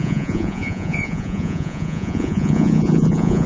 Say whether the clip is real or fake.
fake